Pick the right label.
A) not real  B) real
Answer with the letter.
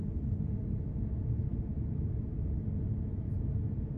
B